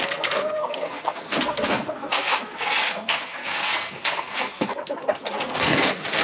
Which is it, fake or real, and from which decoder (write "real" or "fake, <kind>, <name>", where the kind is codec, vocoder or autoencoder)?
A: fake, codec, SNAC